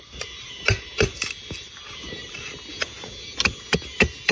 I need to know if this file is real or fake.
real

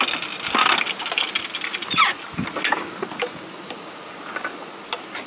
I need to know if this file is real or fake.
real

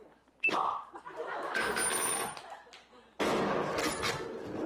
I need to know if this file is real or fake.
real